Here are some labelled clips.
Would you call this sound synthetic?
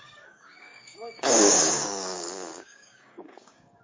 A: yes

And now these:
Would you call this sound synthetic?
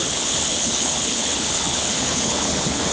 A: yes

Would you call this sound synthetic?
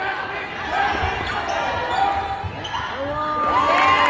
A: no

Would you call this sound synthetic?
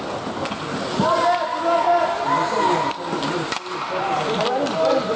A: no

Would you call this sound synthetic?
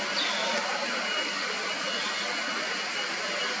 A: no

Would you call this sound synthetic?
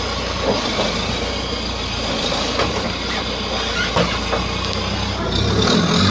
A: no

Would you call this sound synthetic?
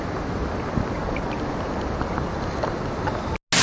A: no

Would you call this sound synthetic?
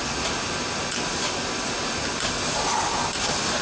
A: no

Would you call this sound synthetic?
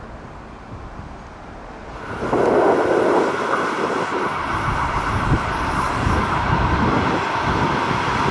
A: no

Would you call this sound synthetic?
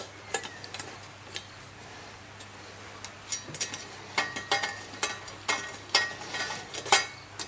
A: no